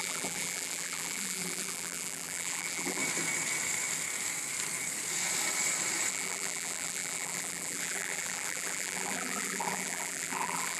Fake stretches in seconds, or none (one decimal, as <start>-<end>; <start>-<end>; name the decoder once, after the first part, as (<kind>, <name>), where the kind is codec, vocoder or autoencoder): 0.0-3.0 (vocoder, BigVGAN v2); 6.1-10.8